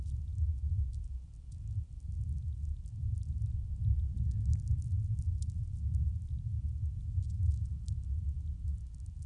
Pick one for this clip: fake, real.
real